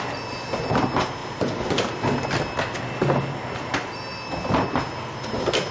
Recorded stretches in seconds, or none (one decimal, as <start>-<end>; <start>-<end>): 0.0-5.7